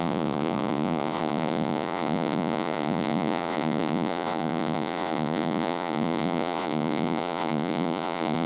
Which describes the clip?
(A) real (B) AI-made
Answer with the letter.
B